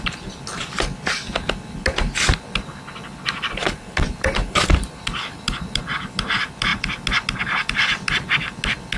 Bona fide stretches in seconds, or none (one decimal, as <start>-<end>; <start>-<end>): 0.0-3.6; 5.8-9.0